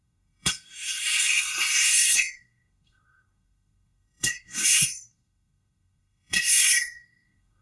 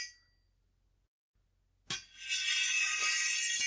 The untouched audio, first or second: second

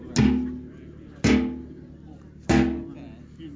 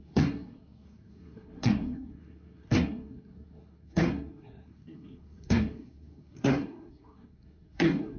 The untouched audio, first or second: first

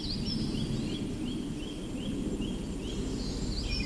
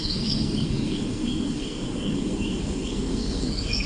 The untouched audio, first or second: first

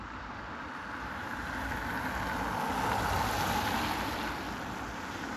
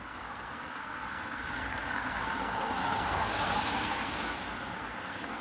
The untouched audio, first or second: first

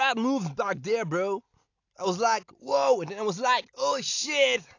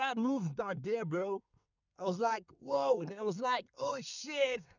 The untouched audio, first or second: first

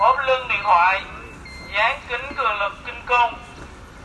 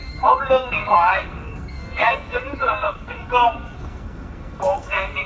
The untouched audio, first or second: first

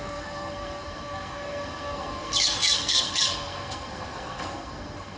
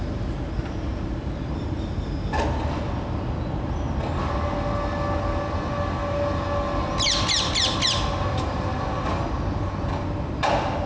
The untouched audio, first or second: second